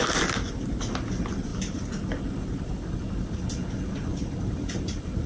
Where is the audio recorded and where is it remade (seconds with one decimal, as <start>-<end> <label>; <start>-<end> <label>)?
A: 0.0-4.1 recorded; 4.1-4.7 remade; 4.7-5.3 recorded